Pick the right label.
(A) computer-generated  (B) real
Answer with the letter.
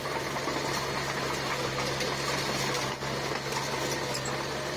B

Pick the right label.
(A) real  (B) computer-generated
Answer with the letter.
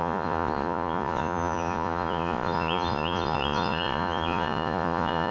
B